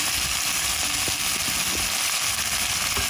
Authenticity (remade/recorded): recorded